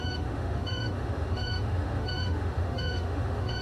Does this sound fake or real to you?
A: fake